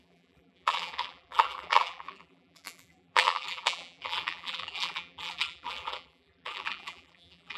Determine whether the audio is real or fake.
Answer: fake